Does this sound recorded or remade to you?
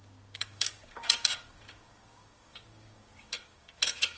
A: remade